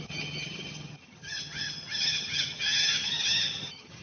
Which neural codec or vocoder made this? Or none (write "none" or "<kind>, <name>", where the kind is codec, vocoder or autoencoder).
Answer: vocoder, HiFi-GAN